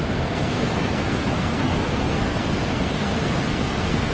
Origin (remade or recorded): remade